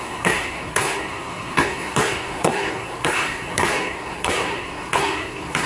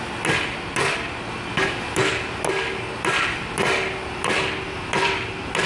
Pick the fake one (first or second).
first